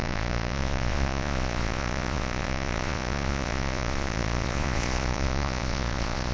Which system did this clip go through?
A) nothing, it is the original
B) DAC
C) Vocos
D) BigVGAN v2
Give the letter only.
C